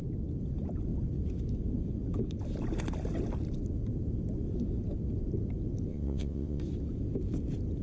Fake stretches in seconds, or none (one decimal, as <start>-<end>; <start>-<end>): 5.9-6.6